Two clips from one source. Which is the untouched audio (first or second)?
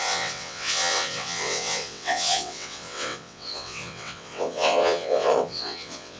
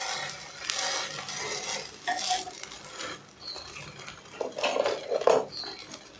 second